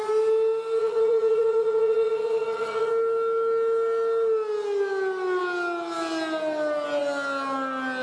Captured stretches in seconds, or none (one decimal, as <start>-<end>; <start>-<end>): 0.0-0.8; 2.9-8.0